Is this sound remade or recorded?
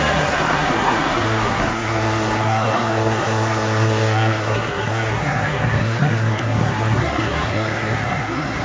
remade